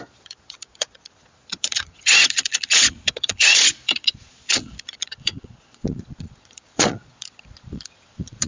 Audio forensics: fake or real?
fake